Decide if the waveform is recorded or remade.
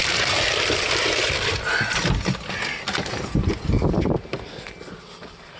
recorded